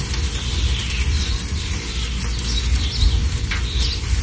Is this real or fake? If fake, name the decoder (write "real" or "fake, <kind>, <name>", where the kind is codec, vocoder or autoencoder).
real